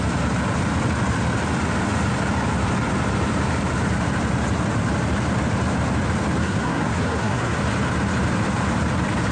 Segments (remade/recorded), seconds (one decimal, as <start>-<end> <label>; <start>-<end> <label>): 0.0-6.4 recorded; 6.4-7.6 remade; 7.6-9.3 recorded